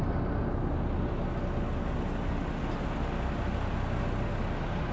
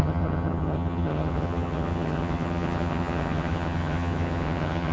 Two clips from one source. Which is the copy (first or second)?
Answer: second